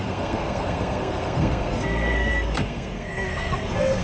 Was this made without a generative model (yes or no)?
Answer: no